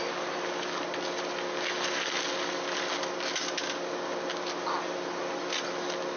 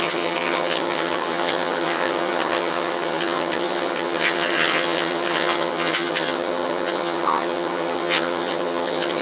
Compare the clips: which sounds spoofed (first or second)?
second